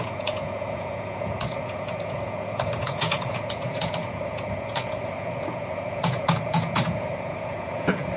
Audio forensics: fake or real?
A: fake